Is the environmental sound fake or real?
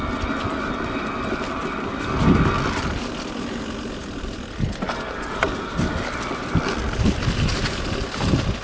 real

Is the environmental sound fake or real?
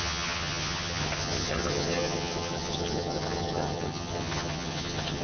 fake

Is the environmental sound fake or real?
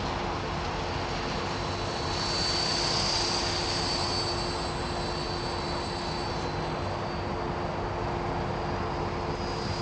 real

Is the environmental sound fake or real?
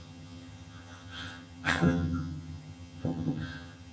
fake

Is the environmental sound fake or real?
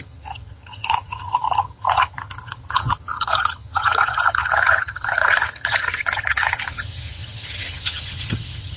fake